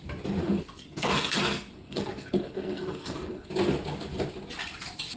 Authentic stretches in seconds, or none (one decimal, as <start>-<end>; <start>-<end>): 0.0-0.4; 3.5-5.2